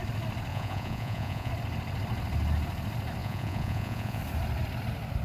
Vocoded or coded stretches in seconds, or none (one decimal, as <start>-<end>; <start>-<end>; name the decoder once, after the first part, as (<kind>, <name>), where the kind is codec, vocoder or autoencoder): 0.5-1.5 (vocoder, Vocos); 3.2-4.2